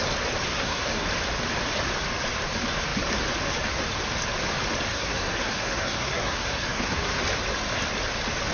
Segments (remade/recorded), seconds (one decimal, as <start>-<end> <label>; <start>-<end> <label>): 0.0-0.5 recorded; 0.5-1.1 remade; 1.1-4.9 recorded; 4.9-7.1 remade; 7.1-8.5 recorded